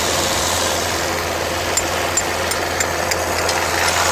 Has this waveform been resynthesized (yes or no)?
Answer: no